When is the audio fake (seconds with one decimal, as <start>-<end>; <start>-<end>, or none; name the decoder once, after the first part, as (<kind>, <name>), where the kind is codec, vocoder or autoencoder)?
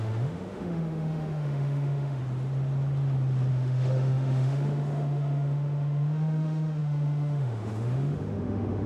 0.0-2.2 (autoencoder, DAC-VAE); 3.5-8.9